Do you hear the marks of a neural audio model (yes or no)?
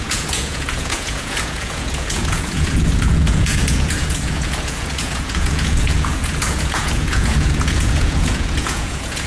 yes